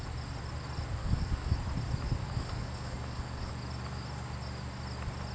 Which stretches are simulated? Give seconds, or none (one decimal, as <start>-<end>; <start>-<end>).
1.0-1.5; 2.2-3.5